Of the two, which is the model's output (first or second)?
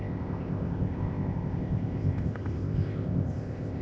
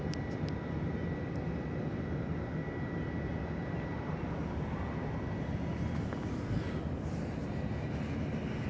first